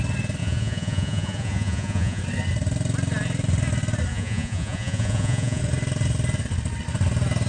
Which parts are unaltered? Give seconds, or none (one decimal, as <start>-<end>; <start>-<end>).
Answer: 0.0-0.4; 2.2-4.1; 5.6-7.5